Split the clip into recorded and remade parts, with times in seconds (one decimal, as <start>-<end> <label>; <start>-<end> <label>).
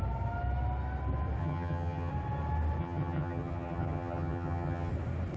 0.0-1.4 recorded; 1.4-2.1 remade; 2.1-2.8 recorded; 2.8-4.9 remade; 4.9-5.4 recorded